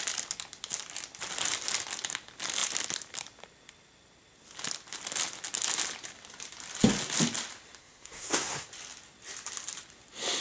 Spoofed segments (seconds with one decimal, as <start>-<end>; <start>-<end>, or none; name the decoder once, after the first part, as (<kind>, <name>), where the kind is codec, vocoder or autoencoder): 7.8-8.7 (codec, SNAC)